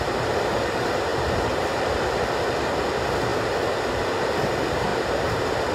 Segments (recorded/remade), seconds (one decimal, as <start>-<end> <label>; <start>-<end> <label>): 0.0-1.1 recorded; 1.1-2.6 remade; 2.6-4.9 recorded; 4.9-5.7 remade